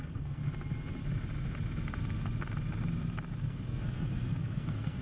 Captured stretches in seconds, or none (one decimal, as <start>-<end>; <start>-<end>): 0.4-3.4